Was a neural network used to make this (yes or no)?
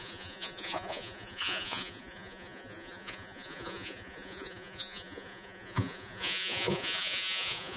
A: yes